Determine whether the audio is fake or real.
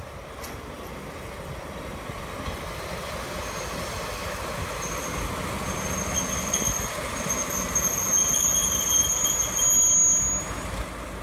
real